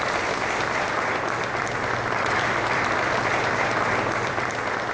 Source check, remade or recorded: remade